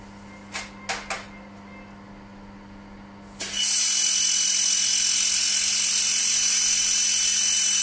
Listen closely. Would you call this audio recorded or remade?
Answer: recorded